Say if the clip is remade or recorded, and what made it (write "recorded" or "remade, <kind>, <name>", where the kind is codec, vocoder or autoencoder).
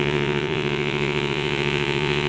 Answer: remade, vocoder, Vocos